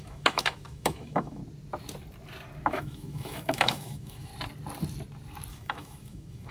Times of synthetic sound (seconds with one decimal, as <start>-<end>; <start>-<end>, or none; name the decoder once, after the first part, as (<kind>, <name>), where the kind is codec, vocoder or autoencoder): 0.0-1.4 (autoencoder, DAC-VAE); 2.7-4.3; 5.5-6.5